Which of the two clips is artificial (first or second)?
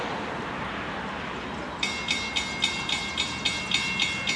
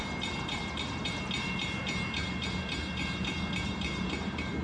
second